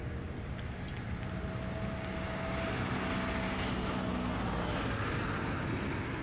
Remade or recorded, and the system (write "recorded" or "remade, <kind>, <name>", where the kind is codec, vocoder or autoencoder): recorded